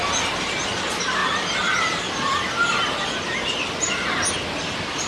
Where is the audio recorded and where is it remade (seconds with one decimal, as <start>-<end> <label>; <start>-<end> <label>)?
0.0-5.1 recorded